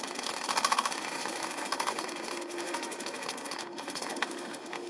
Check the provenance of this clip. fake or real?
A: fake